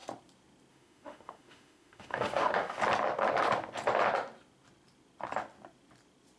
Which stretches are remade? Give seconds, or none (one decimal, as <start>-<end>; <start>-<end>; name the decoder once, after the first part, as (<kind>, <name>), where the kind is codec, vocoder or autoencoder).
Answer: 0.7-2.8 (autoencoder, DAC-VAE)